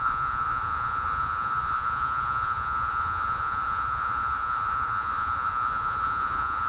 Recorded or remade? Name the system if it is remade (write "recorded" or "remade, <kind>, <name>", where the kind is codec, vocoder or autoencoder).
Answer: remade, vocoder, Vocos